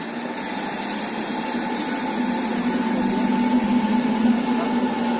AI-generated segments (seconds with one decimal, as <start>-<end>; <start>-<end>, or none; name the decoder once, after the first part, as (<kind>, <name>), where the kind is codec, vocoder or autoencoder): none